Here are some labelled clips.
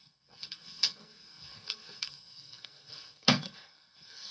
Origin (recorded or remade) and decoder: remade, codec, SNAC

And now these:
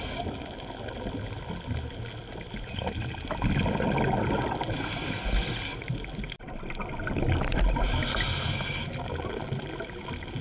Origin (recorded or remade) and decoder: recorded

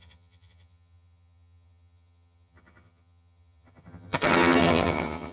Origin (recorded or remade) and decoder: remade, vocoder, HiFi-GAN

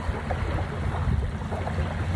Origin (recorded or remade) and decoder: recorded